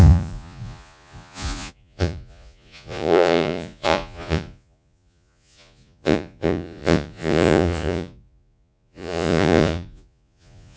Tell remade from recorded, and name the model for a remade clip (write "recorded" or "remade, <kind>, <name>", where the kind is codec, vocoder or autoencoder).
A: remade, vocoder, Vocos